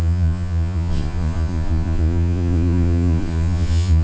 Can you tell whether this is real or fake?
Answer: fake